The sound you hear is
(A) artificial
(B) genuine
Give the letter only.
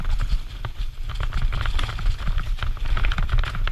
B